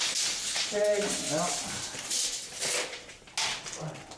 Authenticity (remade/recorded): recorded